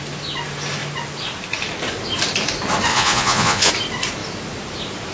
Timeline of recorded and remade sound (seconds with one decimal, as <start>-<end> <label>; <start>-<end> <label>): 0.0-2.9 recorded; 2.9-3.7 remade; 3.7-5.1 recorded